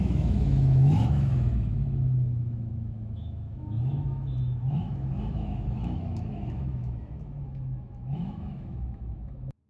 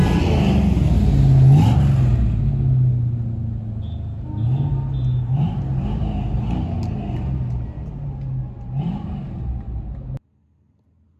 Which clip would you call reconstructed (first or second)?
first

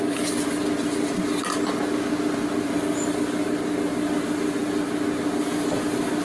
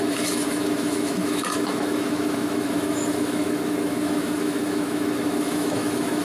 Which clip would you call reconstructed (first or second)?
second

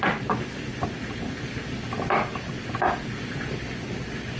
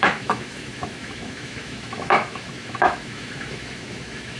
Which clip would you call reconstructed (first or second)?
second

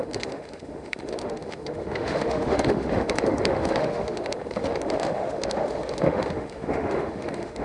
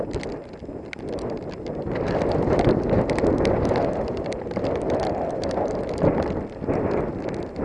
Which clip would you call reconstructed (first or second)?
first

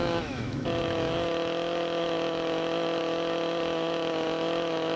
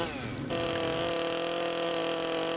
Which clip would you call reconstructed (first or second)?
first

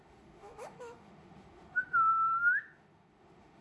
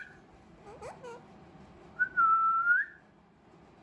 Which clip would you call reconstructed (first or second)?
first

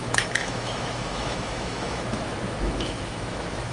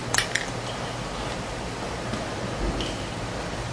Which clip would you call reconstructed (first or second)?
first